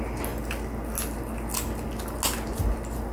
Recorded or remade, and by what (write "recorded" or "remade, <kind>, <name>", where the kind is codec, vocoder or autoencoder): recorded